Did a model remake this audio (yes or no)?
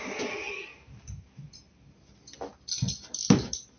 no